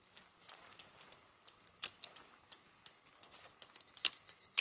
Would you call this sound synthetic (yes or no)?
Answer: no